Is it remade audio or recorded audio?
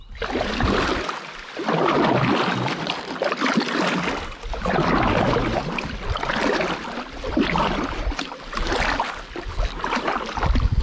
recorded